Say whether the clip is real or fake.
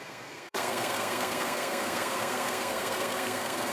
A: fake